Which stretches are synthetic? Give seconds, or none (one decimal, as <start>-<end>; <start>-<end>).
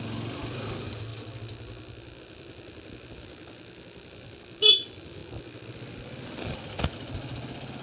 none